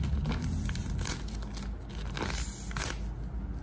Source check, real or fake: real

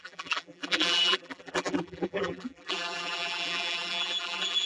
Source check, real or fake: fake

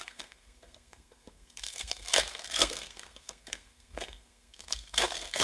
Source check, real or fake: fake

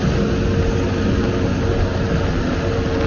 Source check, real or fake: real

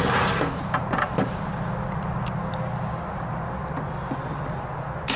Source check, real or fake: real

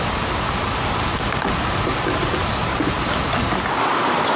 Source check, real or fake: real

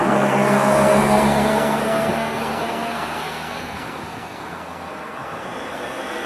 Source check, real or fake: fake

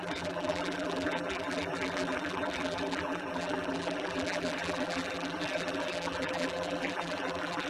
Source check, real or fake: fake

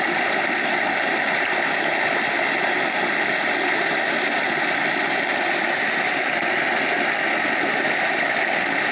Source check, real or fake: real